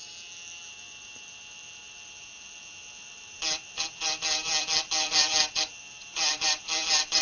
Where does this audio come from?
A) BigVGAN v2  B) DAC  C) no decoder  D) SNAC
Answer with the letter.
A